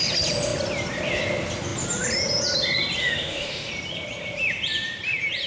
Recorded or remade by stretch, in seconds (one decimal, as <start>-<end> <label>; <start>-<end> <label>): 0.0-3.0 recorded; 3.0-3.7 remade; 3.7-5.5 recorded